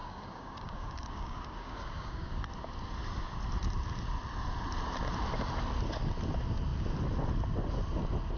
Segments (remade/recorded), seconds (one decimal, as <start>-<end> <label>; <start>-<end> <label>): 0.0-2.4 remade; 2.4-8.4 recorded